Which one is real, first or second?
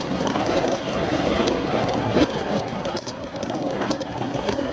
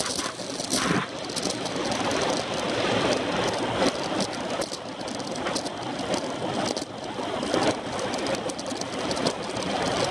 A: second